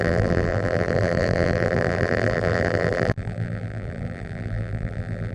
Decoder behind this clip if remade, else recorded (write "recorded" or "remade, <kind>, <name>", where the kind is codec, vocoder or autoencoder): remade, vocoder, BigVGAN v2